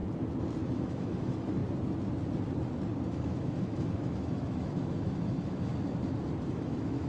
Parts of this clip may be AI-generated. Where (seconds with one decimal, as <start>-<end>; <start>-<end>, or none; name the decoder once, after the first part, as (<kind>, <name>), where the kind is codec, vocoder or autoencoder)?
0.7-1.6 (autoencoder, DAC-VAE); 3.1-5.7; 6.5-7.1